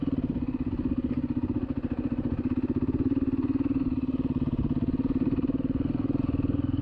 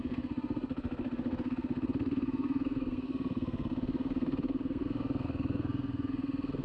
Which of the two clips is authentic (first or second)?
first